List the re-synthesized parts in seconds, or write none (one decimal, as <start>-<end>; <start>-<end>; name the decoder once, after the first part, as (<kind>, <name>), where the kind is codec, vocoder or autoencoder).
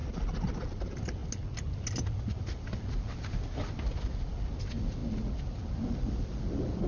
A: none